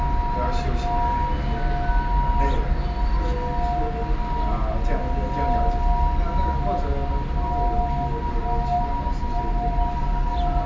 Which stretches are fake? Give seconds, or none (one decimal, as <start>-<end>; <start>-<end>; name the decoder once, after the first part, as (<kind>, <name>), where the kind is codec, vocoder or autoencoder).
none